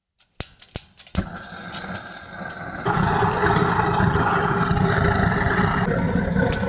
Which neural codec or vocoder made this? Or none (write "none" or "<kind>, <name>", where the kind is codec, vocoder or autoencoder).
none